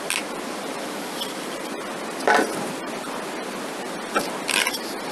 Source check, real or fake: real